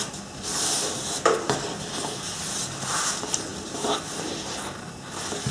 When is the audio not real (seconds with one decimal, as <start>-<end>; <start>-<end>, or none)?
none